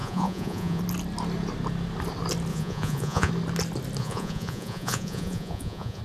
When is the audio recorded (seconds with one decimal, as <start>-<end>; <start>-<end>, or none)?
0.8-2.5; 3.3-4.0